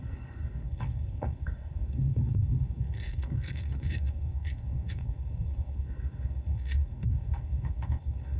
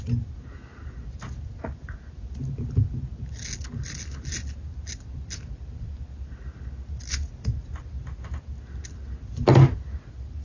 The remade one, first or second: first